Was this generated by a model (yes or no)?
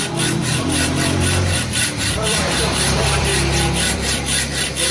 yes